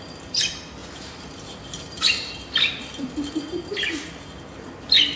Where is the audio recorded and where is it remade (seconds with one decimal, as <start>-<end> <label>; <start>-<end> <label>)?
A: 0.0-0.8 recorded; 0.8-2.8 remade; 2.8-5.2 recorded